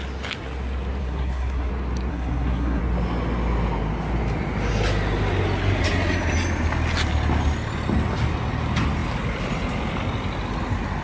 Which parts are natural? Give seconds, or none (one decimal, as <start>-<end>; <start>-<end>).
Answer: 0.0-1.0; 1.7-2.1; 2.8-11.0